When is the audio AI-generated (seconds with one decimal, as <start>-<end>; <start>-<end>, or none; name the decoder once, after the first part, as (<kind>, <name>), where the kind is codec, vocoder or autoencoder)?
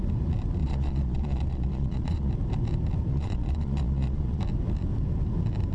0.6-2.3 (vocoder, Vocos); 3.1-4.4